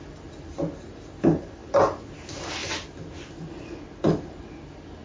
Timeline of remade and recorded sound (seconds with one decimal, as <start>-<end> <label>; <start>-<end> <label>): 0.0-5.0 recorded